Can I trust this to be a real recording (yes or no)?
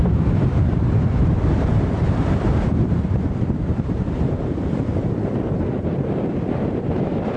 no